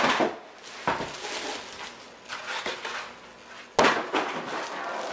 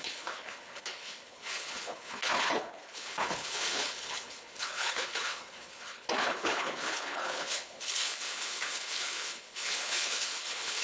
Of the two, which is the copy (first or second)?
second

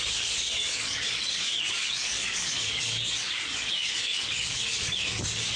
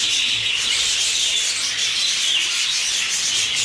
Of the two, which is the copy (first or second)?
first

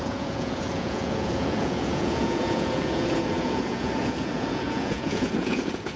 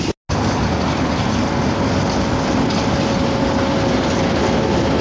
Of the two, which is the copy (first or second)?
first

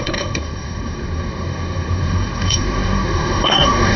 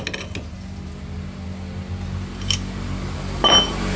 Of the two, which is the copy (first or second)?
first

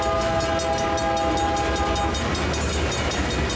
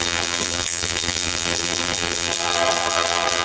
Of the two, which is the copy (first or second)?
second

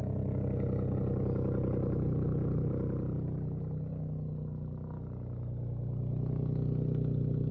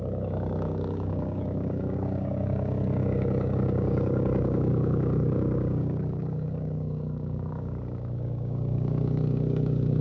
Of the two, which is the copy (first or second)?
second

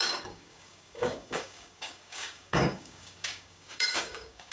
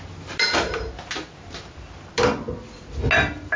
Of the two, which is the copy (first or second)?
first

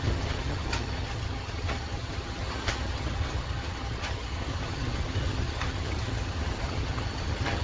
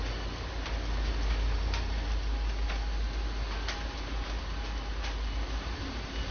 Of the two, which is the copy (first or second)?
first